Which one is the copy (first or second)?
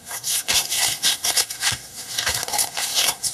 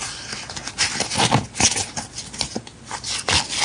first